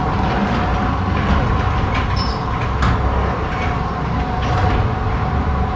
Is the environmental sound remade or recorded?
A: recorded